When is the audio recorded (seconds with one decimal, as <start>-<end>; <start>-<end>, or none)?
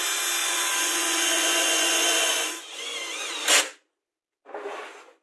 0.0-0.4; 3.5-5.2